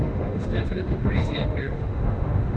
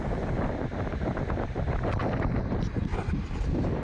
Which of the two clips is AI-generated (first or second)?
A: first